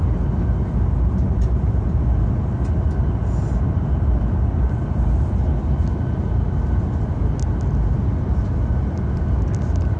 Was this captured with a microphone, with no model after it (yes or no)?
yes